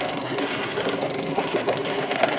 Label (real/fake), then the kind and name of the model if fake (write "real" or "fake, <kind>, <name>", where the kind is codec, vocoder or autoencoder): fake, codec, SNAC